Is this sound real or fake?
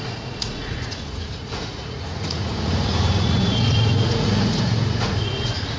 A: fake